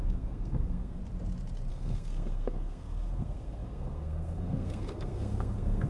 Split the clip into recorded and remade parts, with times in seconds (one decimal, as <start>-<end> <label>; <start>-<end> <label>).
0.0-1.0 remade; 1.0-1.7 recorded; 1.7-5.9 remade